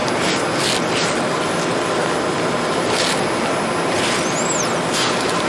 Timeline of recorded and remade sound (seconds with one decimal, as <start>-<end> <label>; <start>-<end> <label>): 0.0-5.5 recorded